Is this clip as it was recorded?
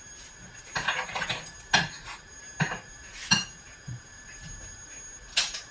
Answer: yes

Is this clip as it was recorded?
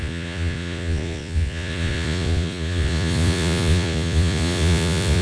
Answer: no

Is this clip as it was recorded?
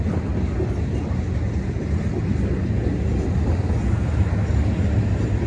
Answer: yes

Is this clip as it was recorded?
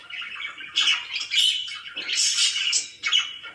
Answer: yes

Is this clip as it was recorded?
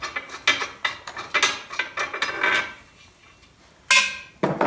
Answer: yes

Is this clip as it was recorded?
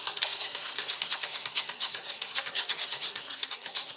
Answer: no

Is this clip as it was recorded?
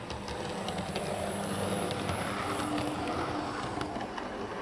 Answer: yes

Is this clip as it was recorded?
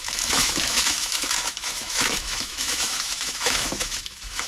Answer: no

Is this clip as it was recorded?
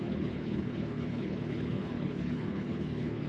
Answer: no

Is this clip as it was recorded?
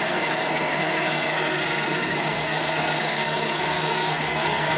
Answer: no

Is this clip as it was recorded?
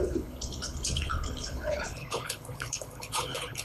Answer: no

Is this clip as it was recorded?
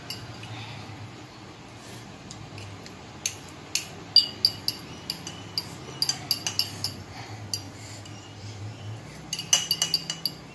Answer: yes